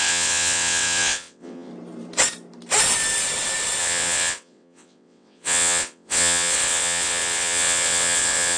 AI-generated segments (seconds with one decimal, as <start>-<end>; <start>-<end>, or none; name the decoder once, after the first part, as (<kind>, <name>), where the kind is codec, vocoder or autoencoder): 0.0-1.7 (vocoder, WaveNeXt); 3.8-8.6